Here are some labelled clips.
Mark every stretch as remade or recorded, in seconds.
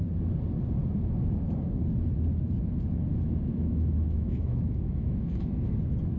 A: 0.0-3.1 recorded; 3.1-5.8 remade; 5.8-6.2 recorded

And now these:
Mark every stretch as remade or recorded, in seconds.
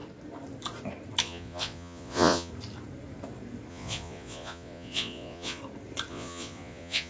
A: 0.0-1.2 recorded; 1.2-2.5 remade; 2.5-3.7 recorded; 3.7-5.6 remade; 5.6-6.1 recorded; 6.1-7.1 remade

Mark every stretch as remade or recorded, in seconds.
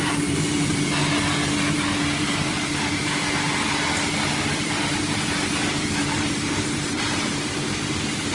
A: 0.0-1.0 remade; 1.0-2.2 recorded; 2.2-3.2 remade; 3.2-4.9 recorded; 4.9-8.3 remade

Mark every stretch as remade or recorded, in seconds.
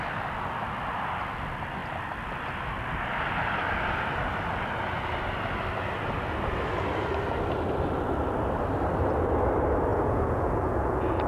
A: 0.0-9.9 recorded; 9.9-11.3 remade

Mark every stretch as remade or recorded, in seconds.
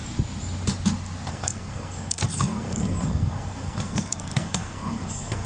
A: 0.0-1.3 recorded; 1.3-5.5 remade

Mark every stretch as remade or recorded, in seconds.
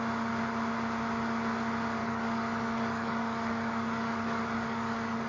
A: 0.0-2.0 recorded; 2.0-5.3 remade